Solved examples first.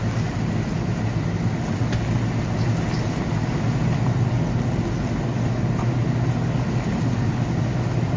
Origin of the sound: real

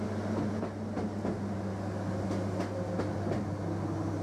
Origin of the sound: real